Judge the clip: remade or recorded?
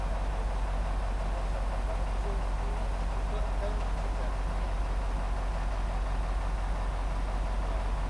recorded